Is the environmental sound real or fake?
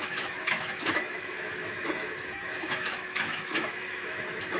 fake